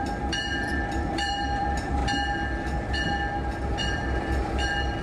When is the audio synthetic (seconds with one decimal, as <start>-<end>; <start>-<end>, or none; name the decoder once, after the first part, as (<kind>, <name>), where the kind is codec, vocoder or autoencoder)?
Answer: 0.0-2.0 (vocoder, BigVGAN v2); 3.9-5.0